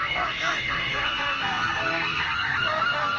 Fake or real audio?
fake